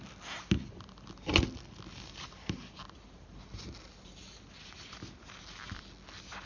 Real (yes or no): yes